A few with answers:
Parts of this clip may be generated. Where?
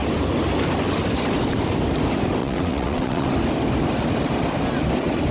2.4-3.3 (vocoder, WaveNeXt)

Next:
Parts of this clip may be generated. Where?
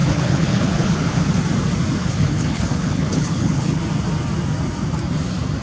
0.0-1.3 (codec, HILCodec); 2.0-3.8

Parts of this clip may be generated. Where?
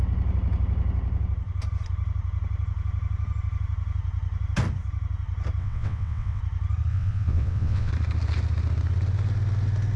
5.6-6.4 (vocoder, WaveNeXt); 6.9-7.9